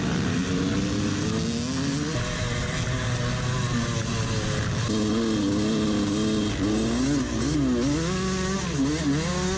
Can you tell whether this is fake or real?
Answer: real